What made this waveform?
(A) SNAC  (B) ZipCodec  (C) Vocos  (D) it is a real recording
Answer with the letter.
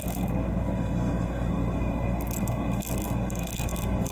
A